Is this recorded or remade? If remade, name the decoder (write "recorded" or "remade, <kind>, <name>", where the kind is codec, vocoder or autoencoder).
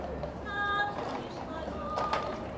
remade, vocoder, BigVGAN v2